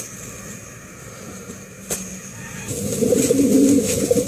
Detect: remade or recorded recorded